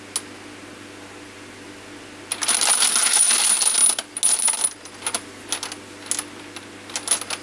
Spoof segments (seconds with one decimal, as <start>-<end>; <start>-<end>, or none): none